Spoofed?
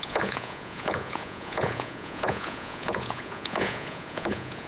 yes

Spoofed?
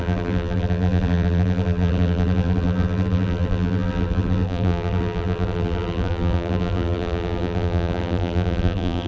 yes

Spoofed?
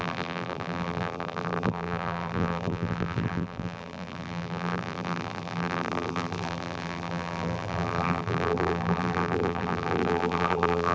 yes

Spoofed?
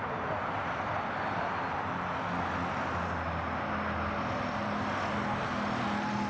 no